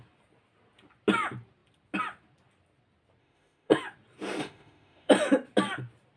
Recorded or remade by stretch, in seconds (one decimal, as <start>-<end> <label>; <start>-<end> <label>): 0.0-3.2 recorded; 3.2-3.8 remade; 3.8-4.4 recorded; 4.4-5.1 remade; 5.1-6.2 recorded